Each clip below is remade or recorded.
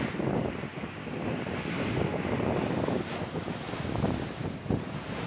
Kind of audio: recorded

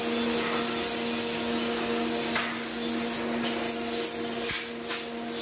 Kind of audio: recorded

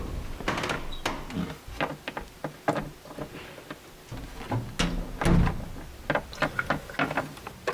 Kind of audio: recorded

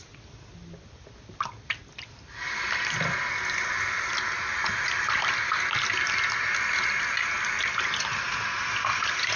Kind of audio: recorded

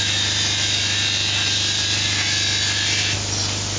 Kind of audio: remade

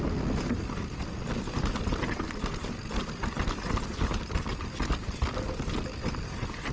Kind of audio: recorded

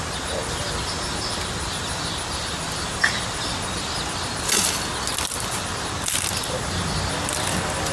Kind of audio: recorded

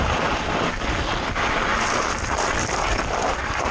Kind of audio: recorded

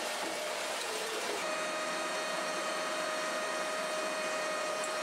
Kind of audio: remade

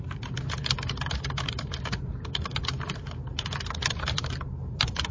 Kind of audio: remade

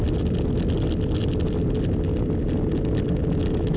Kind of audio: recorded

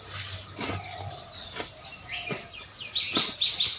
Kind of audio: recorded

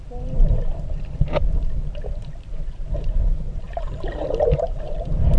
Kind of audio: remade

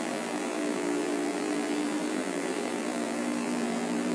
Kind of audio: remade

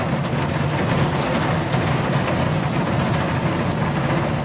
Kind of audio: recorded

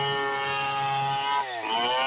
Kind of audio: recorded